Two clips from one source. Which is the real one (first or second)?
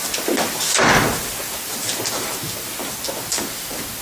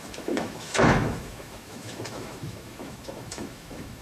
first